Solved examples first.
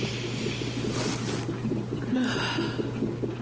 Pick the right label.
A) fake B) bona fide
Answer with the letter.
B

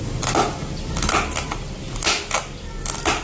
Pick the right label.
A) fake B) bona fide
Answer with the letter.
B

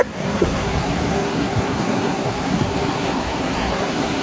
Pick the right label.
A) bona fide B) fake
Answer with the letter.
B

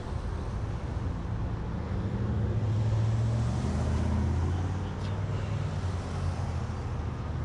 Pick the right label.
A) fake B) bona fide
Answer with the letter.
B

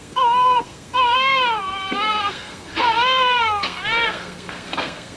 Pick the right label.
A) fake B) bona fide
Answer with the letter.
A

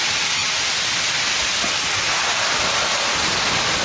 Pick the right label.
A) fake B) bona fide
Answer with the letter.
B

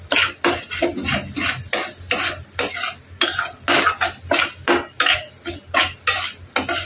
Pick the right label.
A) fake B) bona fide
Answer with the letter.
B